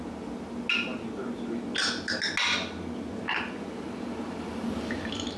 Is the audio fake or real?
real